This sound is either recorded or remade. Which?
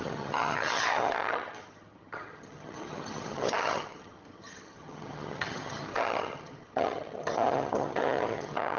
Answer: remade